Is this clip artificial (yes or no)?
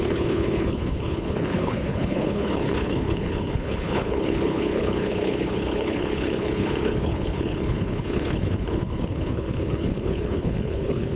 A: yes